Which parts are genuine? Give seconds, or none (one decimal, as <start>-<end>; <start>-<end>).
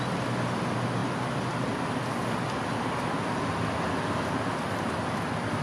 0.0-5.6